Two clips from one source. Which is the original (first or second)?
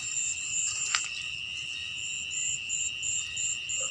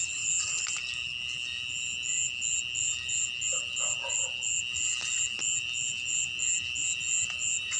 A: second